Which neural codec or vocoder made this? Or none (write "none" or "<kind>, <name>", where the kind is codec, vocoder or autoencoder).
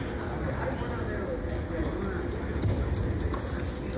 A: none